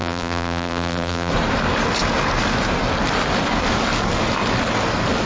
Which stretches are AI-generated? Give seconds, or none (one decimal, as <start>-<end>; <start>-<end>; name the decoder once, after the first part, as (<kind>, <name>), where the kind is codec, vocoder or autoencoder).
0.0-1.3 (vocoder, BigVGAN v2)